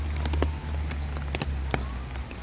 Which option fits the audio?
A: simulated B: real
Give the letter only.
B